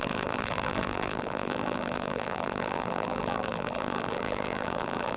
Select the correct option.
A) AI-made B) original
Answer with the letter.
A